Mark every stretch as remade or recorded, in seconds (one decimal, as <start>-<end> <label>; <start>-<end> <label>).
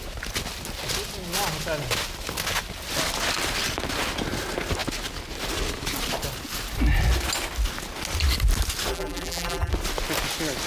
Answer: 0.0-8.9 recorded; 8.9-9.7 remade; 9.7-10.7 recorded